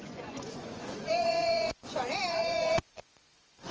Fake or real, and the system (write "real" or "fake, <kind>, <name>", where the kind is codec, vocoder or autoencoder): fake, vocoder, Vocos